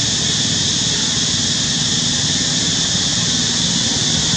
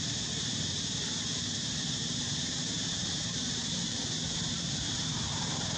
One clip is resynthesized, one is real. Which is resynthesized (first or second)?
second